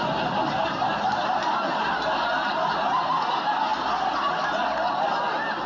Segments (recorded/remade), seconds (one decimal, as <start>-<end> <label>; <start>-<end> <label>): 0.0-5.7 recorded